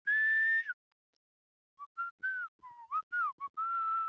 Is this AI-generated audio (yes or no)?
no